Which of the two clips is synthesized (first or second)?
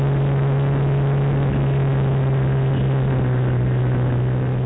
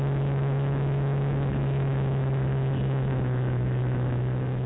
second